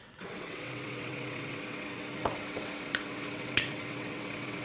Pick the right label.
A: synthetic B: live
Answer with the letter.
A